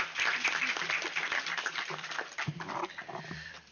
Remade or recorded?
remade